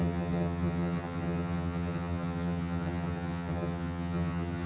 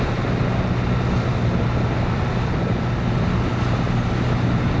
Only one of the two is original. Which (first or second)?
second